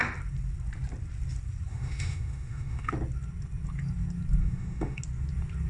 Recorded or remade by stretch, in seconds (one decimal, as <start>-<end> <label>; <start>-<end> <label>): 0.0-1.7 recorded; 1.7-2.9 remade; 2.9-4.4 recorded; 4.4-5.0 remade; 5.0-5.7 recorded